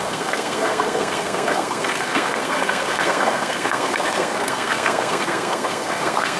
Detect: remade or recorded remade